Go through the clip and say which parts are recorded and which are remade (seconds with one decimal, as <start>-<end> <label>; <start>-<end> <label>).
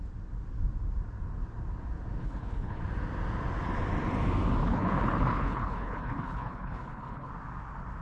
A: 0.0-2.2 recorded; 2.2-2.8 remade; 2.8-4.6 recorded; 4.6-7.3 remade; 7.3-8.0 recorded